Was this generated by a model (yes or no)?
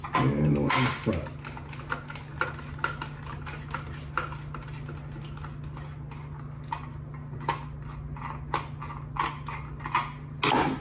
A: no